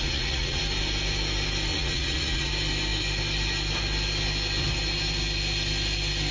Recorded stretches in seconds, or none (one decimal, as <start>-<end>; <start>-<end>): 0.6-1.7; 2.5-6.3